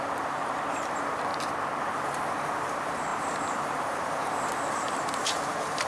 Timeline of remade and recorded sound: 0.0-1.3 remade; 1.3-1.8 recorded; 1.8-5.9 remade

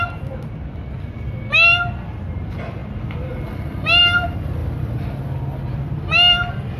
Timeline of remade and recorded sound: 0.0-6.8 recorded

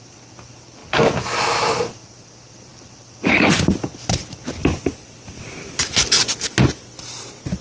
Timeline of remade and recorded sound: 0.0-0.8 recorded; 0.8-1.4 remade; 1.4-4.6 recorded; 4.6-7.6 remade

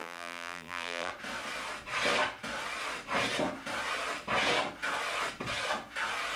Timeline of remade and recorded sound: 0.0-1.1 remade; 1.1-6.4 recorded

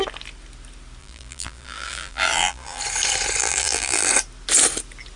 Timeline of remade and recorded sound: 0.0-1.0 recorded; 1.0-2.8 remade; 2.8-3.4 recorded; 3.4-4.1 remade; 4.1-5.2 recorded

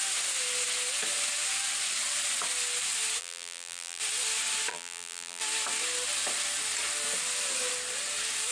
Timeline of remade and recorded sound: 0.0-3.2 recorded; 3.2-4.0 remade; 4.0-4.7 recorded; 4.7-5.4 remade; 5.4-8.5 recorded